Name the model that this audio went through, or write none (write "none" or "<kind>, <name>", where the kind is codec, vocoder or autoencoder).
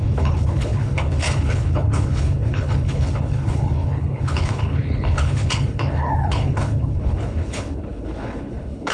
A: codec, HILCodec